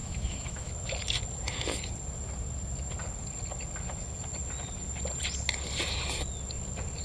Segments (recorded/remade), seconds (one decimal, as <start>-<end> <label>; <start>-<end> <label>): 0.0-0.7 remade; 0.7-7.0 recorded